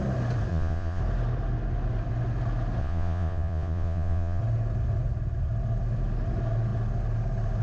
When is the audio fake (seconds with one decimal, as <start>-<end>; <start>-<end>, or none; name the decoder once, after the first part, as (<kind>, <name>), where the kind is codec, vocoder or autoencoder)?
0.5-1.0 (vocoder, Vocos); 2.8-4.4